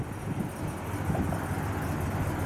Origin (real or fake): real